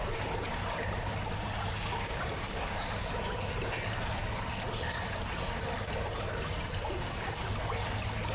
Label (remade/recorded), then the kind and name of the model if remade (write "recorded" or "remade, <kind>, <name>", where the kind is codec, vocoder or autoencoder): recorded